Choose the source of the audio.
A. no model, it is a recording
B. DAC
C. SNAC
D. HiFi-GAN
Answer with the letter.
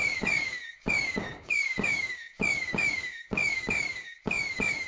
B